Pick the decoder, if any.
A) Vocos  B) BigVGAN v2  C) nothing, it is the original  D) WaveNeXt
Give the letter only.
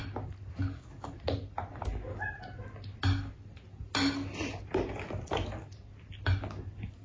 C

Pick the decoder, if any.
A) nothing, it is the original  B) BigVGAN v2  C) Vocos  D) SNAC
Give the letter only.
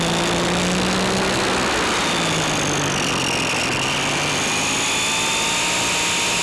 A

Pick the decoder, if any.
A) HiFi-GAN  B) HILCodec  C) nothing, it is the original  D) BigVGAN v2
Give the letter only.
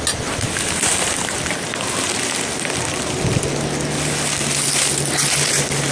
C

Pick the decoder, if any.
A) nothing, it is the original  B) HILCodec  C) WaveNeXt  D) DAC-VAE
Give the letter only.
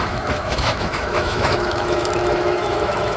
D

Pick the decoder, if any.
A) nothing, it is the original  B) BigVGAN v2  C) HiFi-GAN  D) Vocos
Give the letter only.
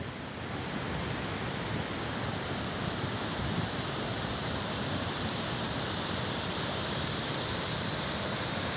B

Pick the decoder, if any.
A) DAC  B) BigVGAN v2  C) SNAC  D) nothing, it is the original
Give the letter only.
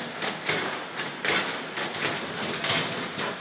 D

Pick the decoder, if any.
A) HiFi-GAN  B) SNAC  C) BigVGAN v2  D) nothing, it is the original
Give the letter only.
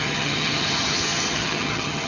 A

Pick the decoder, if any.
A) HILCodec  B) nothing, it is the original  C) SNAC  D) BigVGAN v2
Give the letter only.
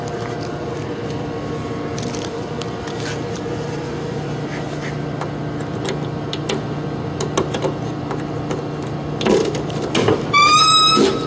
B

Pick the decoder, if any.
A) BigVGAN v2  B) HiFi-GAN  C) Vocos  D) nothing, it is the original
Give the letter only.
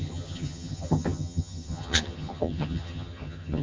B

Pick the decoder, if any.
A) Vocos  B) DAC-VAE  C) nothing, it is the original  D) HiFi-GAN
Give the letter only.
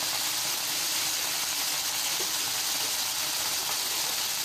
C